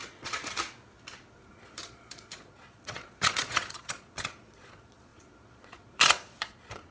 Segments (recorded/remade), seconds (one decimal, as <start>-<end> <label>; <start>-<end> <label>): 0.0-0.4 remade; 0.4-1.5 recorded; 1.5-6.9 remade